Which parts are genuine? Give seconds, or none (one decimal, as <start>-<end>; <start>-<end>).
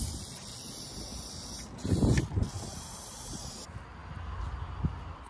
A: 0.0-2.7; 3.6-5.3